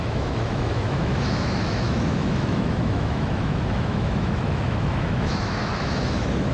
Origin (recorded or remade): remade